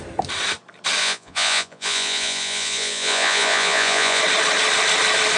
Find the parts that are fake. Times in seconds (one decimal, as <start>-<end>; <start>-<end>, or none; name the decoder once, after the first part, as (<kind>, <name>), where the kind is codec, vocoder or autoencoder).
1.0-4.2 (vocoder, Vocos)